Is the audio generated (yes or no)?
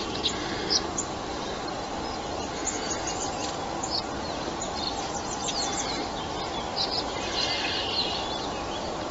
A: no